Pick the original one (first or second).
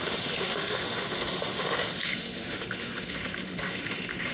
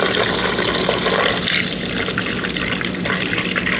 second